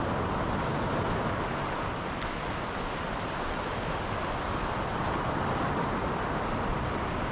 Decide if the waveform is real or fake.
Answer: real